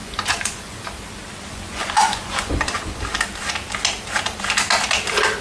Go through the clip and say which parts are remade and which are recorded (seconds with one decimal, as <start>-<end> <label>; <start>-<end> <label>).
0.0-0.8 remade; 0.8-1.5 recorded; 1.5-3.0 remade; 3.0-5.4 recorded